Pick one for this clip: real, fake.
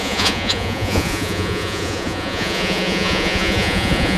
fake